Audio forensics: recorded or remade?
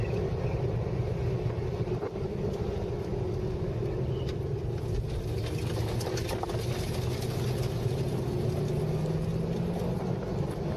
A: recorded